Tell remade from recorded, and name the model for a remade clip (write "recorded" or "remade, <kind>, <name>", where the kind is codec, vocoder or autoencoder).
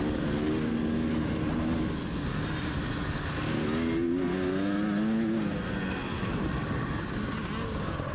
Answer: recorded